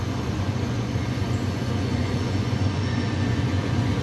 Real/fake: fake